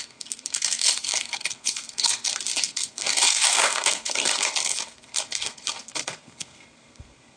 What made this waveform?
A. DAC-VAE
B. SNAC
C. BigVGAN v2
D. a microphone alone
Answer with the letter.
B